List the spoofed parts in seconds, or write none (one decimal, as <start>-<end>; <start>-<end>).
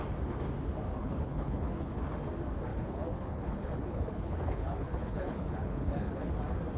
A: 1.0-2.0; 2.7-6.3